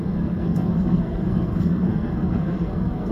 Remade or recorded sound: remade